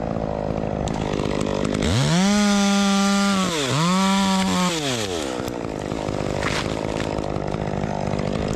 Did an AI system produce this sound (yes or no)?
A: no